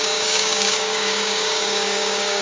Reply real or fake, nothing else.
fake